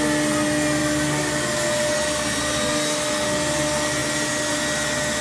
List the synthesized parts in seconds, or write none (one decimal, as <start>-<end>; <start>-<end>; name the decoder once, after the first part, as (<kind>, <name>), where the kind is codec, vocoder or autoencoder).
none